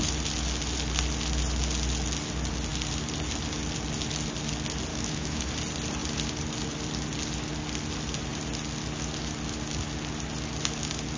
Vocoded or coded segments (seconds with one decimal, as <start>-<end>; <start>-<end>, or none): 4.9-5.5